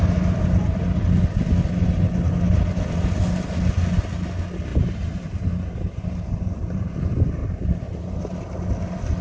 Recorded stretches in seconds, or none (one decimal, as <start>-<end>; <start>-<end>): 0.0-4.7; 6.9-7.4; 8.2-9.2